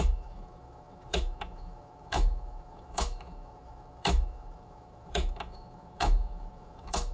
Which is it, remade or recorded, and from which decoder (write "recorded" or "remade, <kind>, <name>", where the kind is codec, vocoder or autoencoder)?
remade, autoencoder, DAC-VAE